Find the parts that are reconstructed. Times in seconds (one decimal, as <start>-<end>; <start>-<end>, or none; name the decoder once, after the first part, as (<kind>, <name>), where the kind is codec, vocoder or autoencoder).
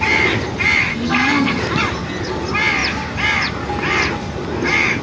0.9-1.6 (codec, SNAC)